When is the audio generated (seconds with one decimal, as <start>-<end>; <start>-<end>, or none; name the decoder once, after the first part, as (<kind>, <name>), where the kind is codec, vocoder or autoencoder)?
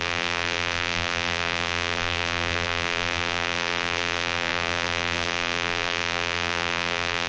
0.0-7.3 (vocoder, BigVGAN v2)